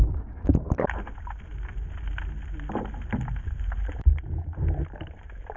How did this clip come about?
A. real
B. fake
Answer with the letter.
A